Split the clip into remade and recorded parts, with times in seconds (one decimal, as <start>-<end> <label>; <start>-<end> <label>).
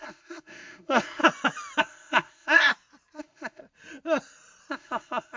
0.0-1.2 remade; 1.2-1.8 recorded; 1.8-2.7 remade; 2.7-3.2 recorded; 3.2-3.6 remade; 3.6-4.7 recorded; 4.7-5.4 remade